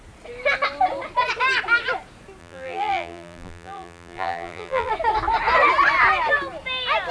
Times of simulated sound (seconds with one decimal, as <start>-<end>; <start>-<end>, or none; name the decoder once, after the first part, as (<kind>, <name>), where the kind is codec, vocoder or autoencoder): 2.4-4.9 (vocoder, BigVGAN v2)